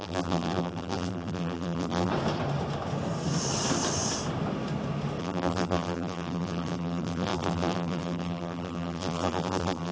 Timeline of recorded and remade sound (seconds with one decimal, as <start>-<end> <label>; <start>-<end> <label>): 0.0-2.1 remade; 2.1-5.2 recorded; 5.2-9.9 remade